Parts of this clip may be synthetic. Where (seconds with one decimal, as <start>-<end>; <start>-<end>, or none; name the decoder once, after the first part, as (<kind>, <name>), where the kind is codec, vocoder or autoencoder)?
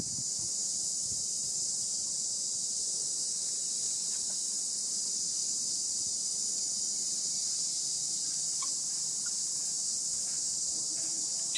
0.7-2.3 (vocoder, BigVGAN v2); 3.5-4.2; 5.4-8.7